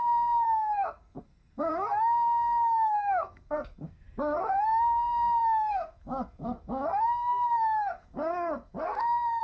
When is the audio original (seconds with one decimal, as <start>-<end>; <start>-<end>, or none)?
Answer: none